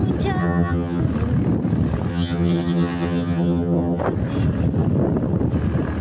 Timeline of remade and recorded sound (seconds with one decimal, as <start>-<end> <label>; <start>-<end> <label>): 0.0-0.4 recorded; 0.4-1.0 remade; 1.0-2.1 recorded; 2.1-4.0 remade; 4.0-6.0 recorded

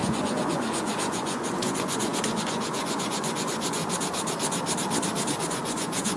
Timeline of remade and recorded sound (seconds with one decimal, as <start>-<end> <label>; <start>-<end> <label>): 0.0-3.8 remade; 3.8-5.4 recorded; 5.4-6.2 remade

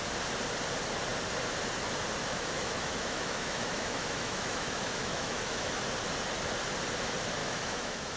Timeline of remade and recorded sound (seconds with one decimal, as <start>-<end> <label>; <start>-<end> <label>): 0.0-2.2 recorded; 2.2-5.8 remade; 5.8-7.4 recorded; 7.4-8.2 remade

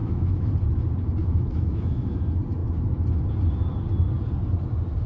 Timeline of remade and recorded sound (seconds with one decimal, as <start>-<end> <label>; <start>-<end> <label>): 0.0-0.5 remade; 0.5-1.2 recorded; 1.2-2.2 remade; 2.2-5.1 recorded

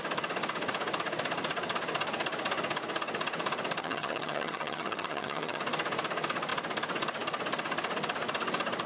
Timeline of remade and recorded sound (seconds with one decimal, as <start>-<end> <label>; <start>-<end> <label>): 0.0-3.8 recorded; 3.8-5.6 remade; 5.6-8.9 recorded